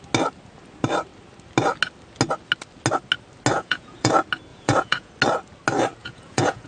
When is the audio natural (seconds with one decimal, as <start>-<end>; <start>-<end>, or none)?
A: 0.0-3.5; 4.1-4.5; 5.1-6.0